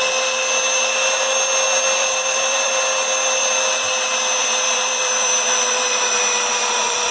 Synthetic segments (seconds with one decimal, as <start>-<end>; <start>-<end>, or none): 2.0-2.7; 3.4-7.1